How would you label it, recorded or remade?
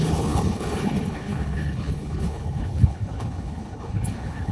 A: remade